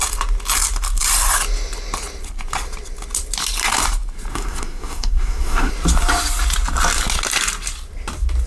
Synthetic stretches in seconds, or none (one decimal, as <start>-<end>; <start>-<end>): 4.3-5.7

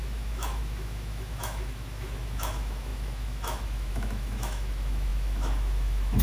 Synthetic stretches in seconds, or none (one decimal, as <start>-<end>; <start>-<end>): 0.0-6.2

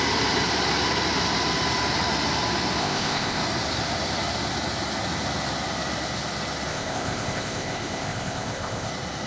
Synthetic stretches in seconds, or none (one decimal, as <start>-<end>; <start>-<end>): 2.8-3.4; 6.7-8.9

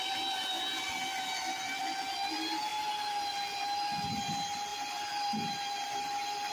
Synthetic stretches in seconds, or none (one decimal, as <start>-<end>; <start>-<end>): 2.7-3.6; 4.7-6.5

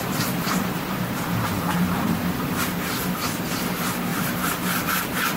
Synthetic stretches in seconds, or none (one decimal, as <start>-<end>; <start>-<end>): 0.0-5.4

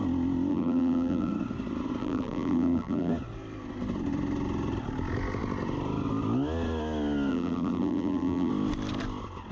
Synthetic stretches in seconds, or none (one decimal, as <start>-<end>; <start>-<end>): 0.5-1.3; 2.0-3.1; 7.3-8.5

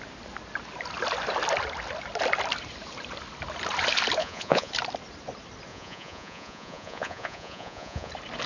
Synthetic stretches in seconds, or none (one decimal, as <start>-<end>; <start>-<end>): 4.2-4.7; 5.7-8.1

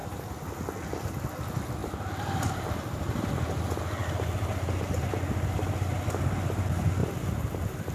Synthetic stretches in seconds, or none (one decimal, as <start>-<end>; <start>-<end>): 1.8-3.3; 7.0-7.9